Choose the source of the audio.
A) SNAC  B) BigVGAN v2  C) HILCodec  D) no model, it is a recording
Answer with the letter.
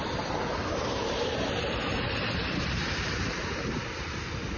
B